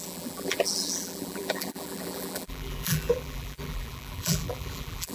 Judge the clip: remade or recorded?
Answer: remade